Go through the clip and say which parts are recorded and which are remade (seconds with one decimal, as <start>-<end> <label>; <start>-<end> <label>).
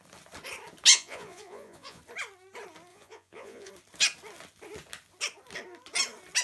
0.0-0.9 recorded; 0.9-2.0 remade; 2.0-2.9 recorded; 2.9-3.7 remade; 3.7-6.4 recorded